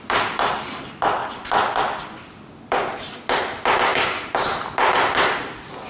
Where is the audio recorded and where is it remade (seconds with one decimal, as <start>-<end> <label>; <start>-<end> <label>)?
0.0-5.9 recorded